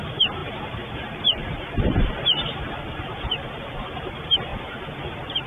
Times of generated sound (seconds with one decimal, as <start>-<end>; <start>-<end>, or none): 0.0-4.5; 5.0-5.5